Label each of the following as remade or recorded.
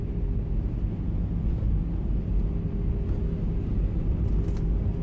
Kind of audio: recorded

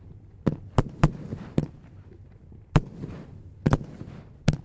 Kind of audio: recorded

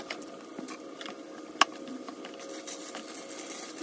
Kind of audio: recorded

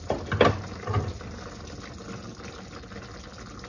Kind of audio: recorded